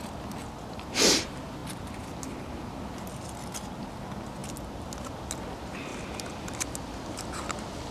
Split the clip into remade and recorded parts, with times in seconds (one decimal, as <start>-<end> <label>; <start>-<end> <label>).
0.0-7.9 recorded